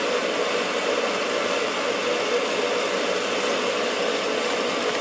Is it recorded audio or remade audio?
recorded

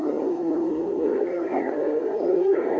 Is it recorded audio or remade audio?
remade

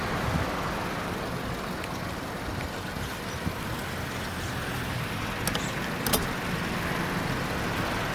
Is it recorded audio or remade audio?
recorded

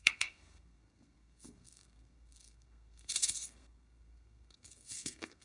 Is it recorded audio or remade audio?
remade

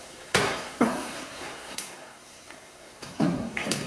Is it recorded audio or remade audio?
remade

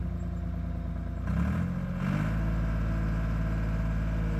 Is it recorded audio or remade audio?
recorded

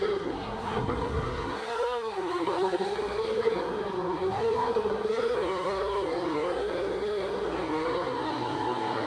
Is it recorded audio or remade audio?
remade